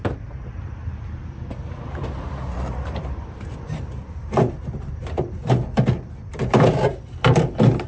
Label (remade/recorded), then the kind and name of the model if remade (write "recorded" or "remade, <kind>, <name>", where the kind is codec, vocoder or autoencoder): remade, vocoder, BigVGAN v2